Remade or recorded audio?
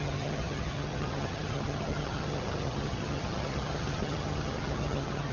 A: remade